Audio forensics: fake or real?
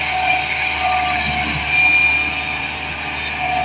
real